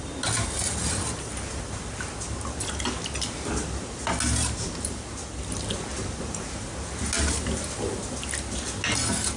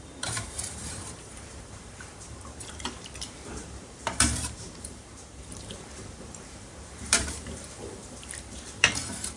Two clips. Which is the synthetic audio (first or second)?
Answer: second